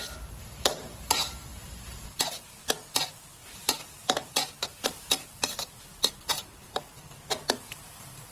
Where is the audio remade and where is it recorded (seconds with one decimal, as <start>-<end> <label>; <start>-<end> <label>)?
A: 0.0-0.4 recorded; 0.4-2.6 remade; 2.6-3.4 recorded; 3.4-6.0 remade; 6.0-8.3 recorded